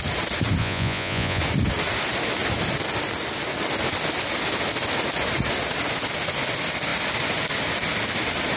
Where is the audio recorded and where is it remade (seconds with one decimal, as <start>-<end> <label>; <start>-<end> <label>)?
0.0-0.6 recorded; 0.6-1.4 remade; 1.4-8.6 recorded